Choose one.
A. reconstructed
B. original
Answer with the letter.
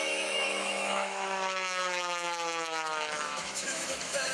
A